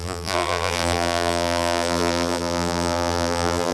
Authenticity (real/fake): fake